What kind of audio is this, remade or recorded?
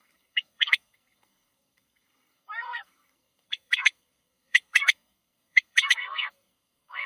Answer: remade